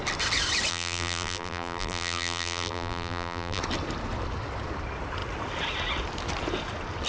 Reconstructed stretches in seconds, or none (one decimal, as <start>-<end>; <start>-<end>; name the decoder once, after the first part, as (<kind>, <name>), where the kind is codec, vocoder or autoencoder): 0.7-3.6 (vocoder, BigVGAN v2)